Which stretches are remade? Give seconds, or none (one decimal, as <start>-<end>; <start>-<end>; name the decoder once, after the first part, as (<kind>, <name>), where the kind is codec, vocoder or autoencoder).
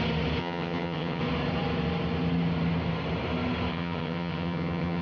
0.4-1.2 (vocoder, HiFi-GAN); 3.7-5.0